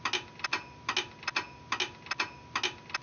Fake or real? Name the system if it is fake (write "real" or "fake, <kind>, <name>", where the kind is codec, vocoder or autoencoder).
real